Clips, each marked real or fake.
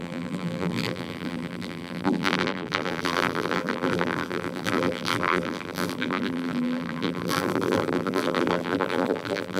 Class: fake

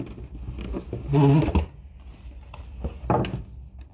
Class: real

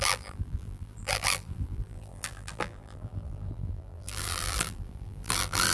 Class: fake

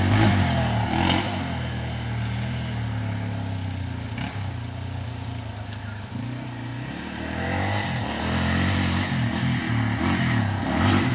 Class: real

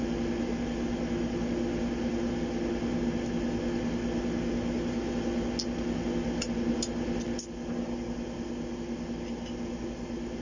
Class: real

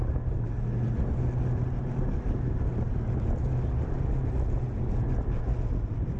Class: real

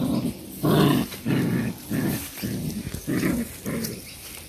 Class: real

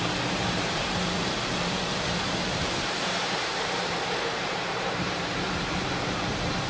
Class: fake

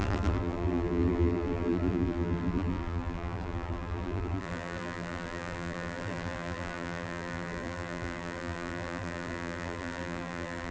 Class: fake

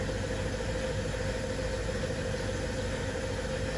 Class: real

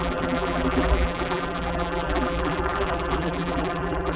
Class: fake